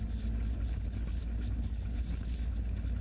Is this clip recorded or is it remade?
recorded